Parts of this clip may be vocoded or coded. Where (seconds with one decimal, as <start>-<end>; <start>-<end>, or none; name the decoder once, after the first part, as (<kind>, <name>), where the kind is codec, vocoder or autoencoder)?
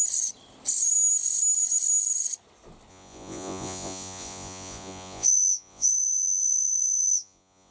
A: 2.9-7.7 (vocoder, Vocos)